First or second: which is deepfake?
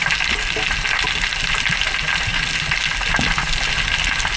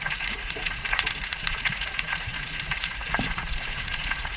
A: second